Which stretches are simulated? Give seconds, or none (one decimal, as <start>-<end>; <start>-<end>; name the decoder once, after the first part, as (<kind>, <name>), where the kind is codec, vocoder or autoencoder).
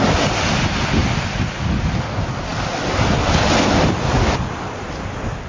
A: 2.5-4.5 (vocoder, BigVGAN v2)